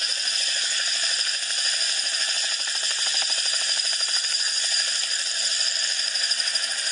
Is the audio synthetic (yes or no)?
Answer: yes